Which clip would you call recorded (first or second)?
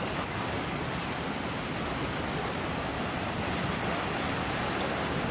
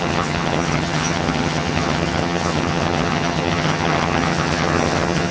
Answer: first